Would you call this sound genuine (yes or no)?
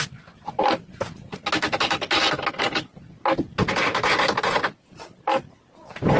yes